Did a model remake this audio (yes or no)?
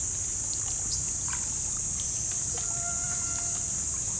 no